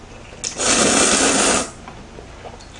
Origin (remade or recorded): recorded